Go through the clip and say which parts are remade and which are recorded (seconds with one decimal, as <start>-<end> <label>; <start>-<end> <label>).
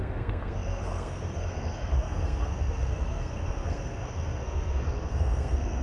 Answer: 0.0-5.8 remade